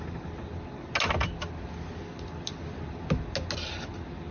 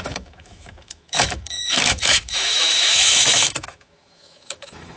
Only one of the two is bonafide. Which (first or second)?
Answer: first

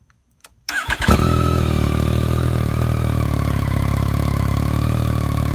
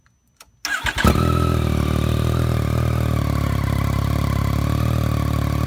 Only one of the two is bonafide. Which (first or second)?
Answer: second